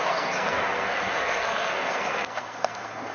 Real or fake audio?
fake